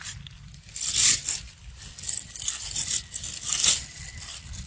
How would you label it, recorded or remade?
recorded